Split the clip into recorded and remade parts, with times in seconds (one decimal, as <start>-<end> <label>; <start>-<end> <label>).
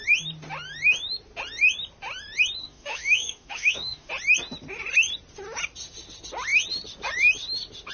0.0-2.6 recorded; 2.6-4.1 remade; 4.1-7.9 recorded